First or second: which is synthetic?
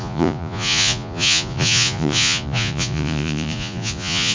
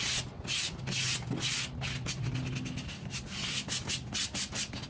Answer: first